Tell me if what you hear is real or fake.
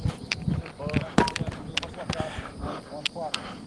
real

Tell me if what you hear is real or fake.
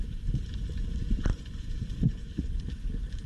fake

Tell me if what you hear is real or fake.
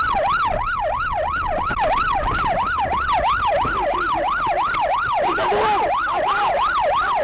real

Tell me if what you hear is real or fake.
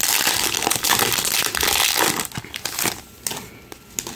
real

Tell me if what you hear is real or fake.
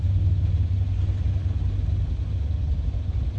real